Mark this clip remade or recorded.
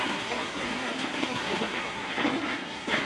remade